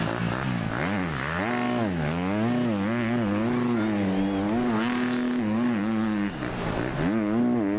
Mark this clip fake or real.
real